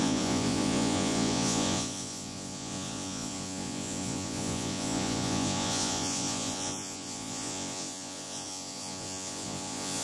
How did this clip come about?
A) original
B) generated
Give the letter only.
B